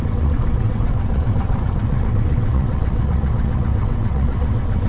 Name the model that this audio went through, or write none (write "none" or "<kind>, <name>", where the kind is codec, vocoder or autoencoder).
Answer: vocoder, WaveNeXt